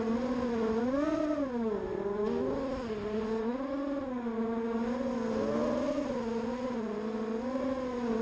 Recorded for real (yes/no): yes